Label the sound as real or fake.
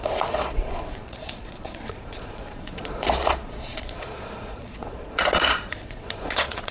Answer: fake